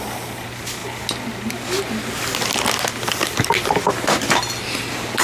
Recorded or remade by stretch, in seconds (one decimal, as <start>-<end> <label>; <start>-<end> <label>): 0.0-5.2 recorded